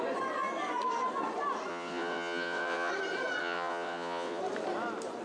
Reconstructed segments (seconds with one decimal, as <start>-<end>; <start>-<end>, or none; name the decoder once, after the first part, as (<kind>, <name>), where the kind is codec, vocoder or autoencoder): 1.7-2.9 (vocoder, WaveNeXt); 3.4-4.4